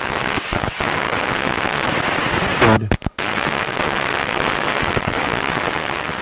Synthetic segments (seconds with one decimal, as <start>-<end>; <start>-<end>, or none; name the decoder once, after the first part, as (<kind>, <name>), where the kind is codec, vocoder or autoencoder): 0.0-1.9 (vocoder, WaveNeXt); 3.1-6.2